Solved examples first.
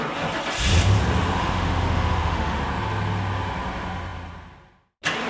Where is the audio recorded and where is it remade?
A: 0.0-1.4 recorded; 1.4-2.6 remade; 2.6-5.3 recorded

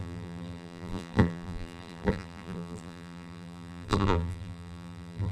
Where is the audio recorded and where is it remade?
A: 0.0-5.3 remade

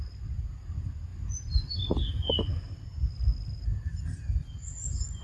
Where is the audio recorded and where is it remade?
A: 0.0-5.2 recorded

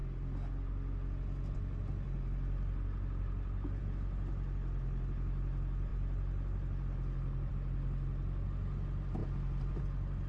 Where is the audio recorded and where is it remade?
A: 0.0-10.3 recorded